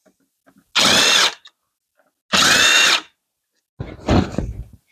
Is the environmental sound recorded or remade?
recorded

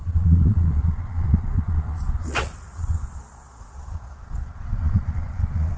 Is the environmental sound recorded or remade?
remade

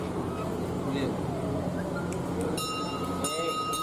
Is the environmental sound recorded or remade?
recorded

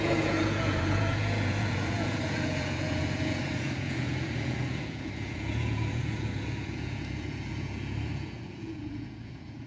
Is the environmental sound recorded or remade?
remade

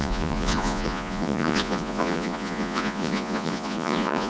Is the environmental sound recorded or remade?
remade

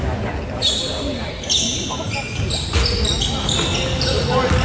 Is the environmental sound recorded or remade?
recorded